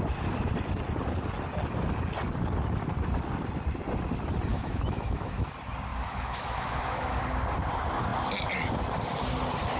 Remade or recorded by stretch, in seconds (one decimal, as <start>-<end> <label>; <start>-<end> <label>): 0.0-4.5 recorded; 4.5-5.5 remade; 5.5-5.9 recorded; 5.9-7.2 remade; 7.2-9.8 recorded